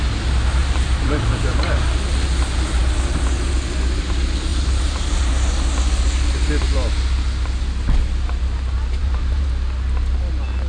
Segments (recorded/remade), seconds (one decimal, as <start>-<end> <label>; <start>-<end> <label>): 0.0-0.6 recorded; 0.6-1.8 remade; 1.8-4.5 recorded; 4.5-5.3 remade; 5.3-9.0 recorded; 9.0-9.5 remade; 9.5-10.7 recorded